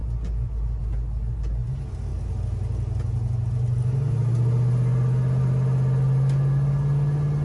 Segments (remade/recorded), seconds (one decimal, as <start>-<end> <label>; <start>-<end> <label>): 0.0-7.4 recorded